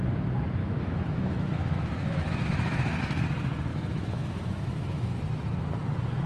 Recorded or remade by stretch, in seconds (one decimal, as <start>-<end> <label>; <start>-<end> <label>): 0.0-0.6 recorded; 0.6-3.0 remade; 3.0-3.7 recorded; 3.7-5.2 remade; 5.2-6.3 recorded